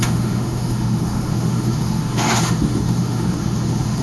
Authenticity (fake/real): fake